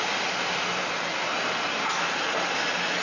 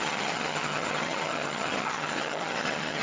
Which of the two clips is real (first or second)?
first